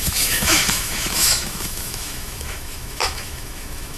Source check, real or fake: fake